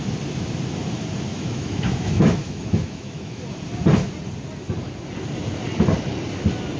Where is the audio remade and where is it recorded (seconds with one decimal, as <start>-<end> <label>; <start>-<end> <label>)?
0.0-1.3 recorded; 1.3-3.4 remade; 3.4-6.8 recorded